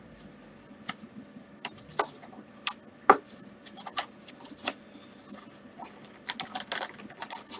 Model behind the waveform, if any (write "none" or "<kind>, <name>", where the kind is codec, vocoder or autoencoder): none